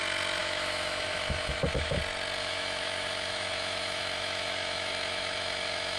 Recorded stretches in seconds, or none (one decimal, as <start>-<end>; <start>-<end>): 0.0-0.4; 2.0-2.4